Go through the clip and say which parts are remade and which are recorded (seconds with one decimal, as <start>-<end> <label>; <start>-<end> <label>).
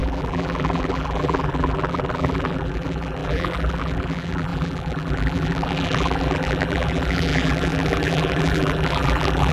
0.0-9.5 remade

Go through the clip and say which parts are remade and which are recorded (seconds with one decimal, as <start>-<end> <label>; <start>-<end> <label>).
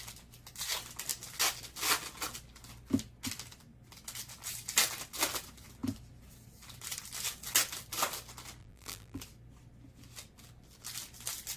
0.0-8.6 recorded; 8.6-9.2 remade; 9.2-11.6 recorded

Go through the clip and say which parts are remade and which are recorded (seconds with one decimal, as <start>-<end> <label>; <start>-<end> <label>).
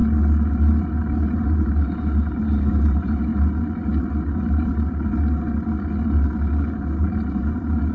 0.0-1.0 recorded; 1.0-3.3 remade; 3.3-4.5 recorded; 4.5-5.1 remade; 5.1-7.0 recorded; 7.0-7.9 remade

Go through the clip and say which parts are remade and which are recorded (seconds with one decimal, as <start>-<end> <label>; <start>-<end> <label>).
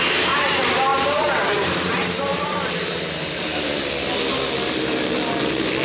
0.0-0.9 recorded; 0.9-3.9 remade; 3.9-5.8 recorded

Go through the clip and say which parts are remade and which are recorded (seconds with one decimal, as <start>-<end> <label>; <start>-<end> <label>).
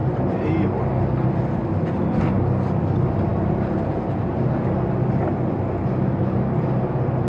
0.0-0.8 remade; 0.8-7.3 recorded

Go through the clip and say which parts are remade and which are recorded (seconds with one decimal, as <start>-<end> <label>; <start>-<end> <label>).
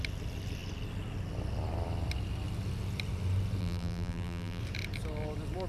0.0-3.6 recorded; 3.6-4.6 remade; 4.6-5.7 recorded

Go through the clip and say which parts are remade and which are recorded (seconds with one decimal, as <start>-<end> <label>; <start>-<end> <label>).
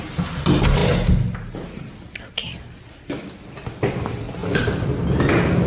0.0-5.7 recorded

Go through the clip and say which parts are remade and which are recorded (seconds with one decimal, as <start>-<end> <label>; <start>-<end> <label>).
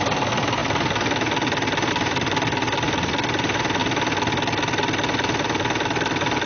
0.0-0.6 remade; 0.6-1.9 recorded; 1.9-3.8 remade; 3.8-6.5 recorded